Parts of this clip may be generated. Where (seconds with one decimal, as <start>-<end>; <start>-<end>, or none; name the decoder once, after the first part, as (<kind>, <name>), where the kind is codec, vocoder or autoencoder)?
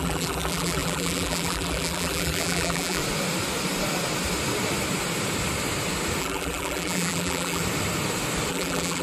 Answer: 0.0-3.0 (vocoder, BigVGAN v2); 6.2-7.6; 8.5-9.0